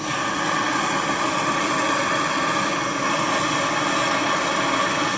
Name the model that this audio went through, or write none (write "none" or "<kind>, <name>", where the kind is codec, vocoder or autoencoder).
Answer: none